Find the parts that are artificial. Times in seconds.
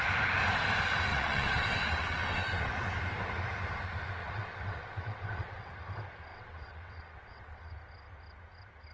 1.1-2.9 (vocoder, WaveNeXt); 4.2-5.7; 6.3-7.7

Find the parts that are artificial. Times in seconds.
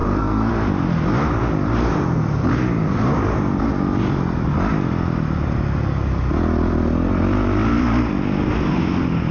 0.0-0.5 (codec, SNAC)